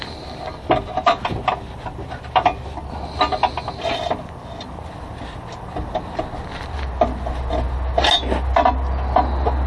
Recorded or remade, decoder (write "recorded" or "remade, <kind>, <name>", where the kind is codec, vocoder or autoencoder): recorded